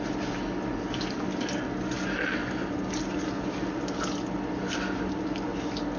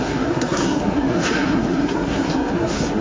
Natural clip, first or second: first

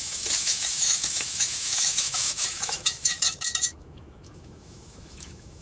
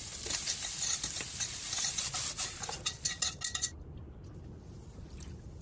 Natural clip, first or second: second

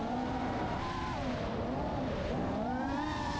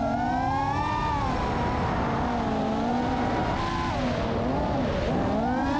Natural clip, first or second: second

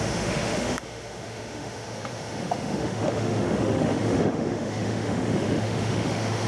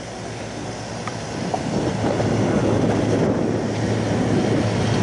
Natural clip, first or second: second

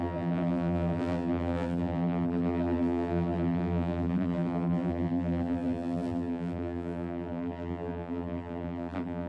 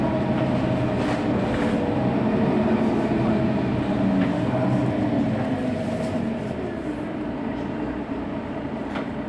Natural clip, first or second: second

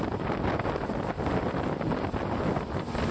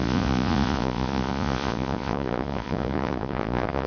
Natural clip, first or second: first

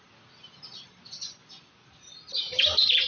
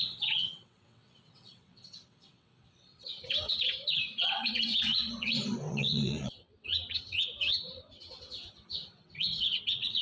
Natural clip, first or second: first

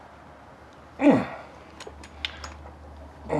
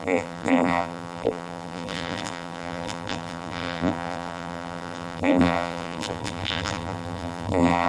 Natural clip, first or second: first